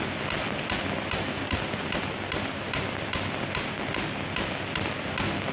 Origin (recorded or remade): recorded